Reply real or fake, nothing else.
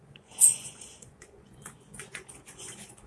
fake